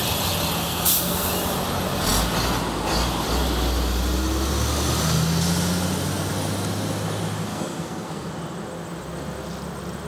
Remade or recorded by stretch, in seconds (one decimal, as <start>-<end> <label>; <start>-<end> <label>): 0.0-0.6 recorded; 0.6-1.3 remade; 1.3-7.5 recorded; 7.5-8.3 remade; 8.3-10.1 recorded